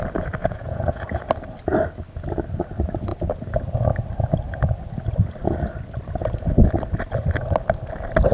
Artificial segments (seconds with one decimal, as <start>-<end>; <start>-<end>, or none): 0.4-1.2